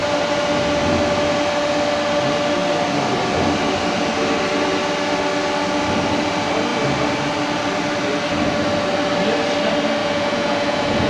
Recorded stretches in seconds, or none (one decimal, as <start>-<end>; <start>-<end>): 0.0-10.0